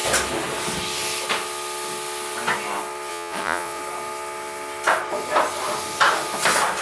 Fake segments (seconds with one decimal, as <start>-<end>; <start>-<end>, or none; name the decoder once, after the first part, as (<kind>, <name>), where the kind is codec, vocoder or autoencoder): 3.1-3.8 (vocoder, Vocos)